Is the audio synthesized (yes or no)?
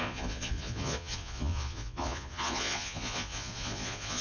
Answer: yes